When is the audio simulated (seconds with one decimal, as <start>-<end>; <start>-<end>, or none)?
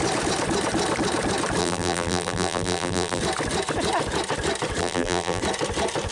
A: 1.6-3.2; 4.8-5.4